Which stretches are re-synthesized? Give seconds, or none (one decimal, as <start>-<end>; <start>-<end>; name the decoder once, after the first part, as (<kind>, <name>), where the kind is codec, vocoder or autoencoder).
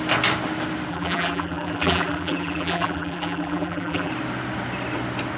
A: 0.9-4.1 (vocoder, BigVGAN v2)